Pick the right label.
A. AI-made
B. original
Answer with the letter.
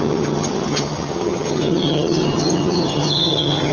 A